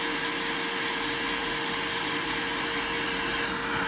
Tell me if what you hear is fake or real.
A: real